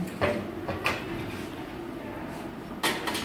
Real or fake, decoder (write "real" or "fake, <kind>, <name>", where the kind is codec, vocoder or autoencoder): real